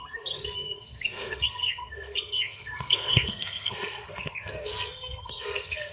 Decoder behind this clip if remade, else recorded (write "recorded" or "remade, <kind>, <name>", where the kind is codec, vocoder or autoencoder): remade, codec, SNAC